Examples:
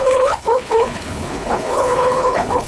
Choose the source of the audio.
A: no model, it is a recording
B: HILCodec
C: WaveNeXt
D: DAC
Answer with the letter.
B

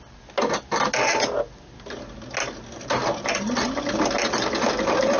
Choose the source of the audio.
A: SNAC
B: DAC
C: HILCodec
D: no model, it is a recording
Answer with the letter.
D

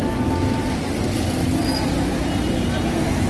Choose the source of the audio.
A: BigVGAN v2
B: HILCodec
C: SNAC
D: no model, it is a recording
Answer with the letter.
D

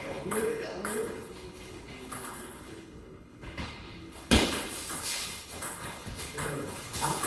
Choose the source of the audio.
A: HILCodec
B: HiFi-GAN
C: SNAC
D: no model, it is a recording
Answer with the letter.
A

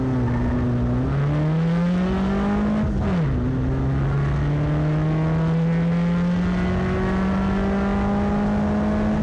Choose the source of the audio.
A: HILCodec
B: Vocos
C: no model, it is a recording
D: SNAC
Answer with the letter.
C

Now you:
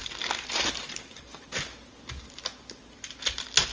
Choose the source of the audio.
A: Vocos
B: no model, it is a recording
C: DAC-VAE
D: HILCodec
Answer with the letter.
B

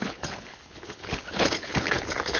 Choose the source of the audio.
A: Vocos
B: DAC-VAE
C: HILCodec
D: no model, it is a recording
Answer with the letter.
C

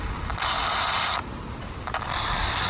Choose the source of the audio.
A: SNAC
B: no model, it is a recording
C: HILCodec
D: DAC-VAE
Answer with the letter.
B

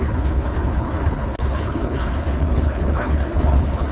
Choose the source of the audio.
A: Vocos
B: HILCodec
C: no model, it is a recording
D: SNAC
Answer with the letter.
B